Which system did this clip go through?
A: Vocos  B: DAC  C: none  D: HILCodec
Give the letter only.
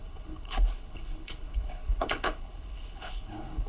D